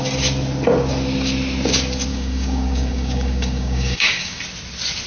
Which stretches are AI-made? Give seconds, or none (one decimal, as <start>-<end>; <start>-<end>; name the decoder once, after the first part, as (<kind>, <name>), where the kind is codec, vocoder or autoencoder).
2.1-4.4 (codec, DAC)